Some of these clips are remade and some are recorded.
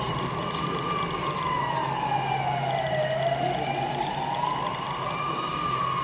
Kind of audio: recorded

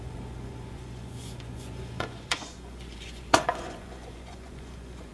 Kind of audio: remade